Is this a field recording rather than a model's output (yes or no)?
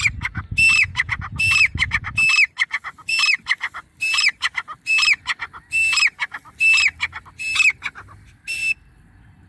yes